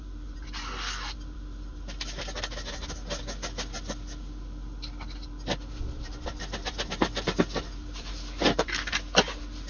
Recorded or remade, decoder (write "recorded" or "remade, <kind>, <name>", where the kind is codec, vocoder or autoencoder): recorded